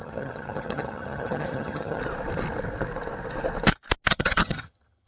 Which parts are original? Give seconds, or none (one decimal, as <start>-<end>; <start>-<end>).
2.0-4.1